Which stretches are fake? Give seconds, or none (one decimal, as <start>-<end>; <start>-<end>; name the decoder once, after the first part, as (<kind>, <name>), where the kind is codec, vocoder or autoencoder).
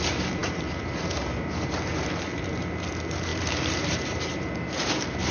0.0-5.3 (vocoder, BigVGAN v2)